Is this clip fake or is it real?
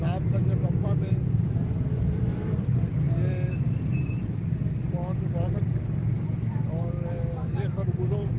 fake